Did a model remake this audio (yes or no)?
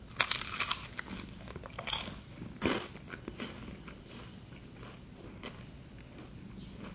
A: no